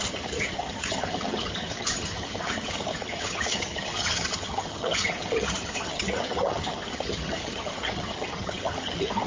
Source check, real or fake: fake